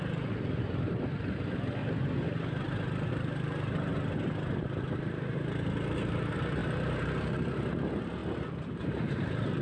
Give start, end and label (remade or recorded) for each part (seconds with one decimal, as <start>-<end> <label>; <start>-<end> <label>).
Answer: 0.0-1.8 remade; 1.8-3.1 recorded; 3.1-3.9 remade; 3.9-4.8 recorded; 4.8-8.2 remade; 8.2-8.7 recorded; 8.7-9.6 remade